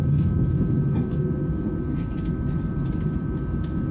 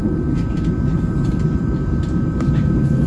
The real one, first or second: first